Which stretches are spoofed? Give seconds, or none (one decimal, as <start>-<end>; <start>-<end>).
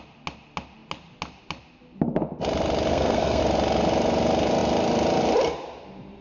2.9-3.4